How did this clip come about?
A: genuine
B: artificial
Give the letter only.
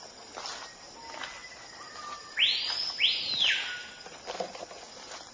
A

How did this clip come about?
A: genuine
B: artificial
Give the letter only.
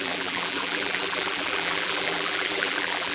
B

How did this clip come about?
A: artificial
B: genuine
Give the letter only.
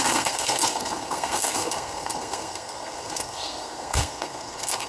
A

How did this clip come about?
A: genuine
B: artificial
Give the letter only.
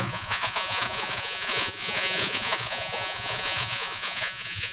B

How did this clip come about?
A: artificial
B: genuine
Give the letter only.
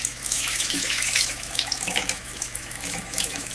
A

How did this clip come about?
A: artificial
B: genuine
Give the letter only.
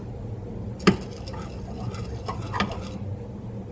B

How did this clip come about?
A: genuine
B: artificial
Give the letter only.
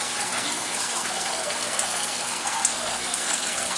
B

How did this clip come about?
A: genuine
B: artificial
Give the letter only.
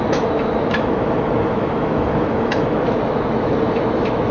B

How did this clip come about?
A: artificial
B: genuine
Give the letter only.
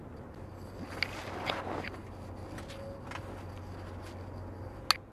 B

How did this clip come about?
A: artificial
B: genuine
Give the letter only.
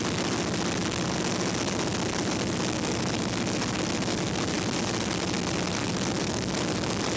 B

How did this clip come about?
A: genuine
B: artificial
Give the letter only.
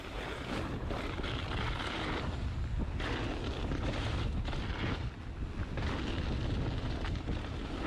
A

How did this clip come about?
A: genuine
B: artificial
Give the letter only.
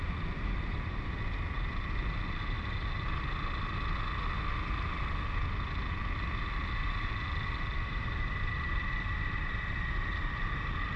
A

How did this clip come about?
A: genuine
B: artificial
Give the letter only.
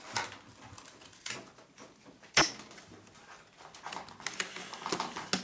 A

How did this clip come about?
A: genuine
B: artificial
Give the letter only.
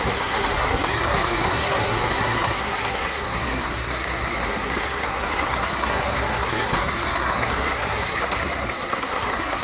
B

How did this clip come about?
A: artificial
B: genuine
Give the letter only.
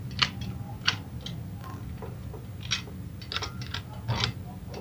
B